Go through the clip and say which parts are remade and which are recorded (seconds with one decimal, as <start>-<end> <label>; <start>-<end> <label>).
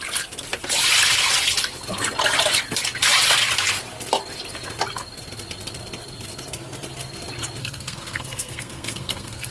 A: 0.0-7.6 recorded; 7.6-9.5 remade